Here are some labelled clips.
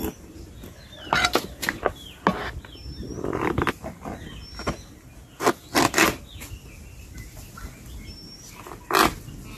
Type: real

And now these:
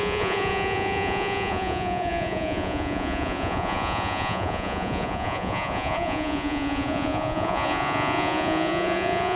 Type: fake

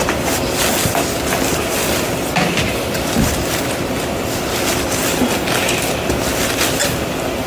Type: real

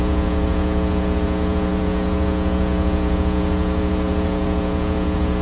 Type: fake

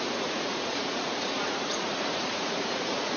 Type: fake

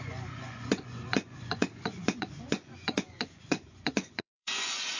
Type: fake